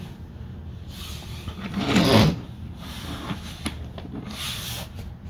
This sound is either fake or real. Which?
real